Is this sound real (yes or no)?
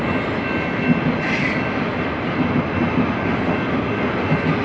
yes